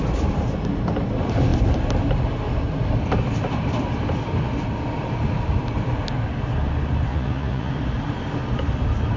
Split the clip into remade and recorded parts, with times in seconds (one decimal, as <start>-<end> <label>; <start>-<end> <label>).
0.0-7.1 recorded; 7.1-7.7 remade; 7.7-9.2 recorded